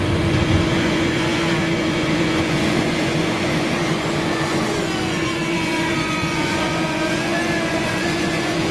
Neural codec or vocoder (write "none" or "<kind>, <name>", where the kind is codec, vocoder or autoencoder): vocoder, Vocos